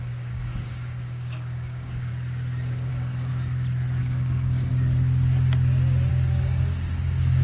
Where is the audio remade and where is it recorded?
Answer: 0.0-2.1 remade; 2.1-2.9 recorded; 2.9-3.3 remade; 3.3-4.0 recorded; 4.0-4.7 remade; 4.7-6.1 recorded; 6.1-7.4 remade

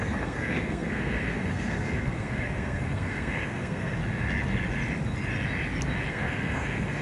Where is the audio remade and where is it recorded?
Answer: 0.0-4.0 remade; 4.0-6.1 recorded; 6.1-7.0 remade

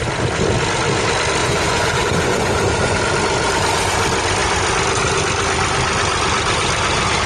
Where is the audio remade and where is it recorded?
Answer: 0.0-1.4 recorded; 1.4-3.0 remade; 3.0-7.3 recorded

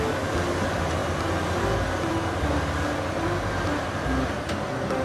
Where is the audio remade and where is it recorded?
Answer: 0.0-5.0 recorded